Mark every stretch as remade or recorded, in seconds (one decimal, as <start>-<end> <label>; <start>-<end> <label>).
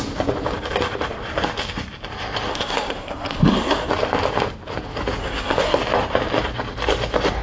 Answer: 0.0-2.5 recorded; 2.5-3.9 remade; 3.9-5.2 recorded; 5.2-5.8 remade; 5.8-7.4 recorded